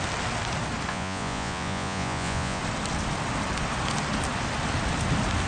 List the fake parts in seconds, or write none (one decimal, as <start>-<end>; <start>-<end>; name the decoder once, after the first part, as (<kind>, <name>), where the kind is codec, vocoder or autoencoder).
0.9-2.6 (vocoder, Vocos)